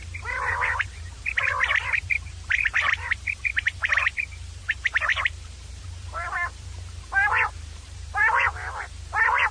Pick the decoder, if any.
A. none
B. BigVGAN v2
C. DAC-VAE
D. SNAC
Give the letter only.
B